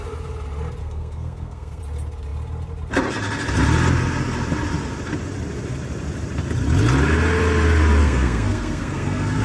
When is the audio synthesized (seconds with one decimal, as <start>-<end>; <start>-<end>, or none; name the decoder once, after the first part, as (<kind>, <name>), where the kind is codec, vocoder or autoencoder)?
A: 0.8-1.8 (codec, SNAC); 8.0-9.4